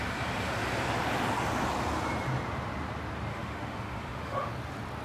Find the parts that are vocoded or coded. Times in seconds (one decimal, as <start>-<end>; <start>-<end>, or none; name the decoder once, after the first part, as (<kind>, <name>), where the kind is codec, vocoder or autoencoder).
3.3-4.5 (autoencoder, DAC-VAE)

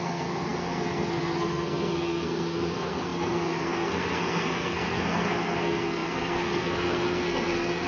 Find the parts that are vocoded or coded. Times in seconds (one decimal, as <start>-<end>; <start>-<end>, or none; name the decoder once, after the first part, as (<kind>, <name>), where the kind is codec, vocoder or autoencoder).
0.0-7.9 (codec, SNAC)

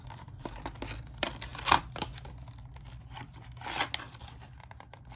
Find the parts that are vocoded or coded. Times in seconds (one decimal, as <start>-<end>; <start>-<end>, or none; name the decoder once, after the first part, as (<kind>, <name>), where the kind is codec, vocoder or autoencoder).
0.0-1.5 (vocoder, BigVGAN v2); 4.6-5.2

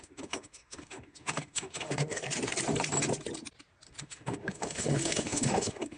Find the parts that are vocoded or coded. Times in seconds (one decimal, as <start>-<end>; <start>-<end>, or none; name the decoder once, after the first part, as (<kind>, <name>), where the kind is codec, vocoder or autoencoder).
0.0-2.2 (autoencoder, DAC-VAE); 4.0-6.0

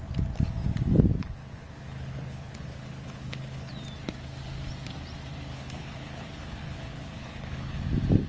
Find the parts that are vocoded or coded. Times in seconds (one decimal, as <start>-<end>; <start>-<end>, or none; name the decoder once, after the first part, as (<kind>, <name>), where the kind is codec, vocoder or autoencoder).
1.2-3.7 (codec, HILCodec); 5.5-7.8

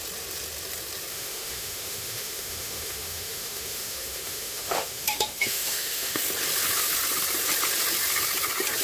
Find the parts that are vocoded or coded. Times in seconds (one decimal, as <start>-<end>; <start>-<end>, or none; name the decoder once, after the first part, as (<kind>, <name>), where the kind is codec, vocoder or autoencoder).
1.1-6.2 (autoencoder, DAC-VAE)

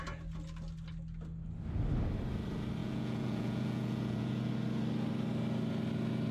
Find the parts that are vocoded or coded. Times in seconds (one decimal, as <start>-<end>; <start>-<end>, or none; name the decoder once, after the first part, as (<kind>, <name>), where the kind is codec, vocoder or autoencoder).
2.8-4.5 (vocoder, Vocos)

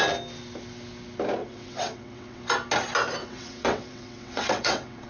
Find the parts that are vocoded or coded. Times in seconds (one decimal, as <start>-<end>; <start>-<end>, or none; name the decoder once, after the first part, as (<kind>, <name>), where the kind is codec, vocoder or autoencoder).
1.4-2.4 (vocoder, WaveNeXt); 3.2-5.1